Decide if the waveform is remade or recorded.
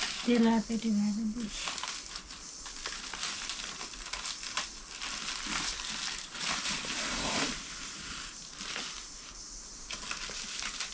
recorded